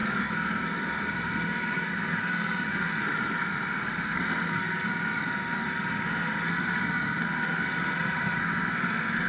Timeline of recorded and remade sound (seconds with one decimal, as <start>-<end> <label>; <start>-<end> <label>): 0.0-9.3 remade